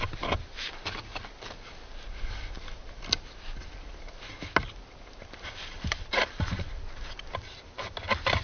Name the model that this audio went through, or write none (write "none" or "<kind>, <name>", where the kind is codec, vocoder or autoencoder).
none